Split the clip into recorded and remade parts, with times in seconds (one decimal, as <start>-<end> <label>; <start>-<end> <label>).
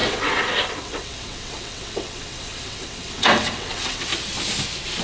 0.0-4.1 remade; 4.1-5.0 recorded